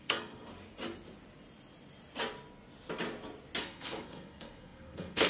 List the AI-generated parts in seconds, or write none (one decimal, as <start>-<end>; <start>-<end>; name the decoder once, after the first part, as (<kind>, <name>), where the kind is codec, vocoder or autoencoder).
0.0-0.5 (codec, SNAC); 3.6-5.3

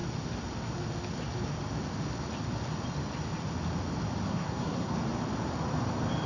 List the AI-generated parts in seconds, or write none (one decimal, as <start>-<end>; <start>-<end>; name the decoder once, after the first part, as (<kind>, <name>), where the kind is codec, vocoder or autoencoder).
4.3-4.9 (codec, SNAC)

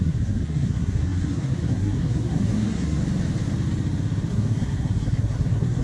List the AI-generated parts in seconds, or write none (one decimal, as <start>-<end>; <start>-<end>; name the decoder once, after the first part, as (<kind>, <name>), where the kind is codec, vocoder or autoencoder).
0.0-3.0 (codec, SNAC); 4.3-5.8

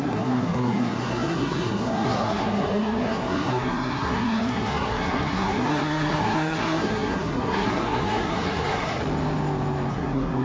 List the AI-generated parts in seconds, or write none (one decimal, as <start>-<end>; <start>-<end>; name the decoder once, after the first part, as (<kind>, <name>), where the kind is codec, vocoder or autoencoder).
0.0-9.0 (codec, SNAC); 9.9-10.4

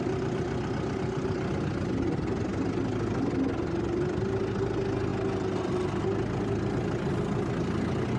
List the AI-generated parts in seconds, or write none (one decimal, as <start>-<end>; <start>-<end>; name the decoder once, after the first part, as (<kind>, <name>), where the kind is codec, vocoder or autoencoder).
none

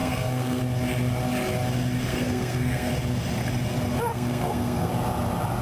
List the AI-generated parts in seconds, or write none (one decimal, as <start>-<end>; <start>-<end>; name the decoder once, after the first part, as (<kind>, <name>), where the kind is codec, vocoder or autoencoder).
0.0-0.6 (codec, SNAC); 2.1-2.9; 4.1-4.9